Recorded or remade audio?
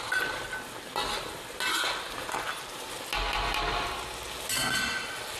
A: recorded